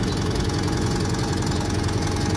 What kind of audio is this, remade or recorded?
remade